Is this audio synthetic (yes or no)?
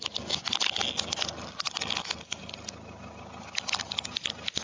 no